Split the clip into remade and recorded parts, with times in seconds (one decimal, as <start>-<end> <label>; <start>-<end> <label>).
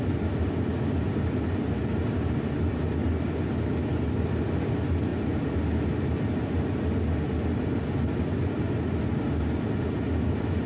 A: 0.0-10.7 recorded